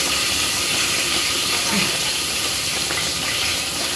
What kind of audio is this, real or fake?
fake